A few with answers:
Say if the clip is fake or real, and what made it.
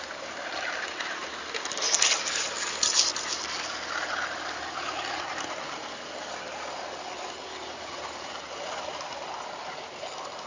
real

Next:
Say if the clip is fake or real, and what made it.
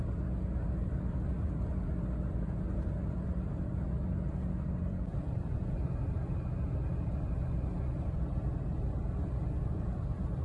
fake, vocoder, BigVGAN v2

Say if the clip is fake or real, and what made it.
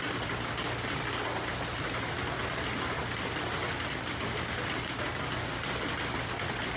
real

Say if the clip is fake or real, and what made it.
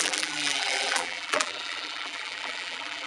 fake, vocoder, BigVGAN v2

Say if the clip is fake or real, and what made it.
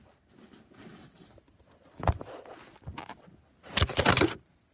real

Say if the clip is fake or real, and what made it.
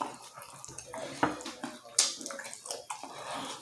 real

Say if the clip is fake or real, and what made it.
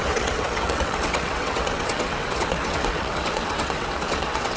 fake, vocoder, WaveNeXt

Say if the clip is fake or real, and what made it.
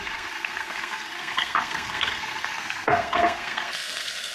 fake, codec, SNAC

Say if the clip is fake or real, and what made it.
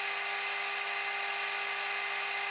real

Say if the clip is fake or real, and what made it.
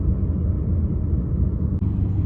real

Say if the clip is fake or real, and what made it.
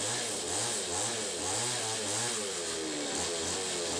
real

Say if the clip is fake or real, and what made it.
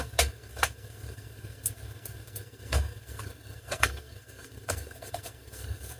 fake, codec, SNAC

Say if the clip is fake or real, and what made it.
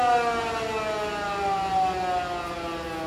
real